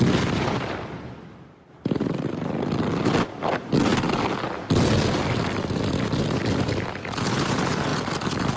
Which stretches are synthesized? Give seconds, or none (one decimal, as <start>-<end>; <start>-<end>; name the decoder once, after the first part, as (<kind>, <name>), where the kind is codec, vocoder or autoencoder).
0.0-3.9 (vocoder, BigVGAN v2); 7.2-7.9